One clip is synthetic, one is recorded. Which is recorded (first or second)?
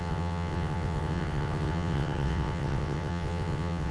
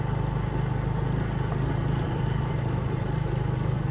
second